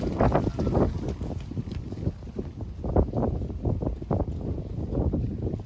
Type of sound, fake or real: real